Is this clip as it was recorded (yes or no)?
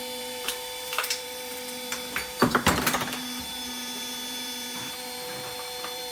no